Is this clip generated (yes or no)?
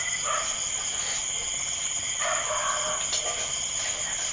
no